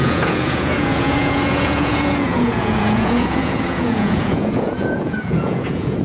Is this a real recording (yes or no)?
no